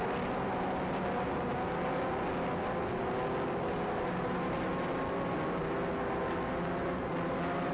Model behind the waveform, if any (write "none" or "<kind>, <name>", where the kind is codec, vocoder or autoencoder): none